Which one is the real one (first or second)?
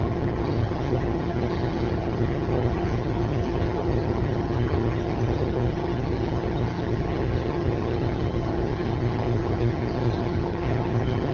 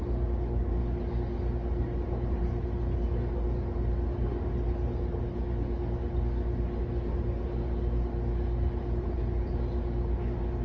second